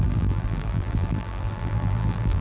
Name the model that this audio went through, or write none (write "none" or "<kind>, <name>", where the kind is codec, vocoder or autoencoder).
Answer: vocoder, BigVGAN v2